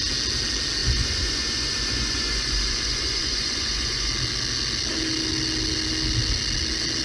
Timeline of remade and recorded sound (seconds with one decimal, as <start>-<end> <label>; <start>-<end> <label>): 0.0-0.8 recorded; 0.8-4.1 remade; 4.1-7.0 recorded